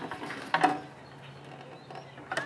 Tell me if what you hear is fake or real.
real